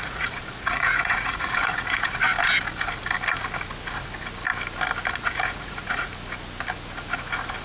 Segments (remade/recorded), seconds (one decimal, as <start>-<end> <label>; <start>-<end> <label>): 0.0-2.3 remade; 2.3-5.1 recorded; 5.1-6.1 remade; 6.1-7.6 recorded